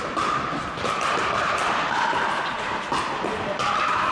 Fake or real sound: real